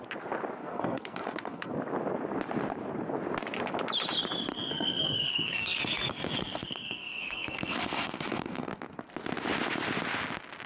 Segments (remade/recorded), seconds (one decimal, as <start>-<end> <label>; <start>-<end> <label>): 0.0-0.6 recorded; 0.6-1.7 remade; 1.7-4.5 recorded; 4.5-8.8 remade; 8.8-10.7 recorded